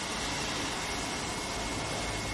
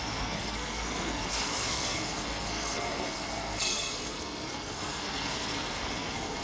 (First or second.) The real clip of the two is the first